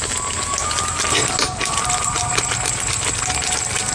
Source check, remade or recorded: recorded